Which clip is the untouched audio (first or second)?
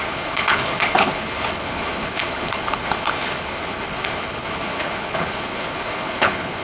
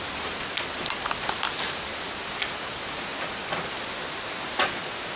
second